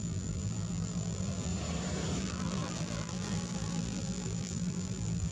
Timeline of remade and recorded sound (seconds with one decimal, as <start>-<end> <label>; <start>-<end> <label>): 0.0-1.5 remade; 1.5-2.2 recorded; 2.2-5.3 remade